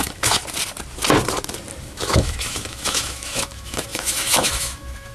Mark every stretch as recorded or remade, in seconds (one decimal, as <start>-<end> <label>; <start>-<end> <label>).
0.0-0.4 remade; 0.4-1.8 recorded; 1.8-5.1 remade